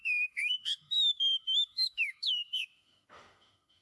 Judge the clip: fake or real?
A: fake